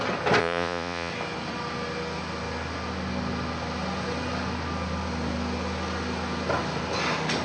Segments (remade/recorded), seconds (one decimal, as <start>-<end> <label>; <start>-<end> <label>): 0.0-0.4 recorded; 0.4-1.1 remade; 1.1-7.4 recorded

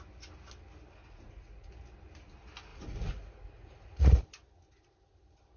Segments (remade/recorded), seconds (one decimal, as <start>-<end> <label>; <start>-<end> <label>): 0.0-1.0 recorded; 1.0-1.7 remade; 1.7-2.7 recorded; 2.7-4.2 remade; 4.2-5.6 recorded

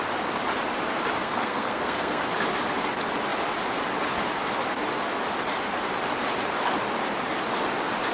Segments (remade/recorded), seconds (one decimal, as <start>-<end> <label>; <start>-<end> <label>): 0.0-1.2 recorded; 1.2-2.2 remade; 2.2-8.1 recorded

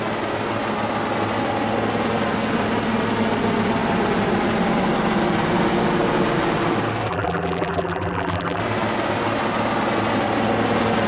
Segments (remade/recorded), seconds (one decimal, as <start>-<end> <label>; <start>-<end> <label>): 0.0-7.1 recorded; 7.1-8.6 remade; 8.6-11.1 recorded

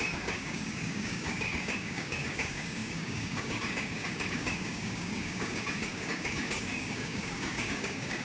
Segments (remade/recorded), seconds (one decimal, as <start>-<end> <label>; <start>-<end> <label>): 0.0-8.2 remade